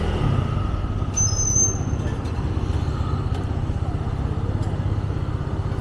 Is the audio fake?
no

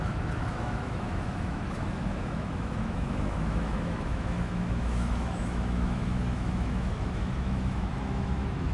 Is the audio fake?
yes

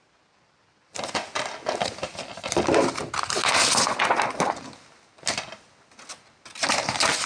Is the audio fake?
no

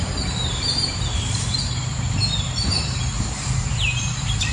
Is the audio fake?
yes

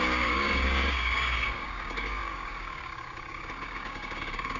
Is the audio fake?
yes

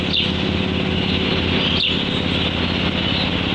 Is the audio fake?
no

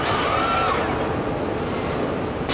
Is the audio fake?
no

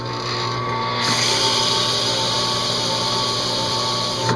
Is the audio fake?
no